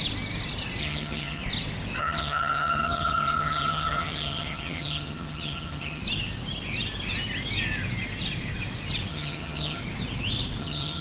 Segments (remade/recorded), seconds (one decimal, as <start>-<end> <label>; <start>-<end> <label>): 0.0-0.8 recorded; 0.8-1.4 remade; 1.4-2.0 recorded; 2.0-6.0 remade; 6.0-9.1 recorded; 9.1-9.8 remade; 9.8-10.6 recorded; 10.6-11.0 remade

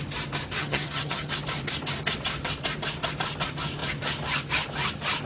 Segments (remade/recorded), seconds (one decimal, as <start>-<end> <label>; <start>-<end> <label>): 0.0-0.6 recorded; 0.6-1.3 remade; 1.3-5.3 recorded

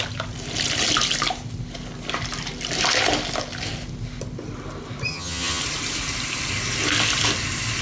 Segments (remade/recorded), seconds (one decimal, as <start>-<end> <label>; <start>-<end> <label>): 0.0-5.1 recorded; 5.1-5.6 remade; 5.6-7.8 recorded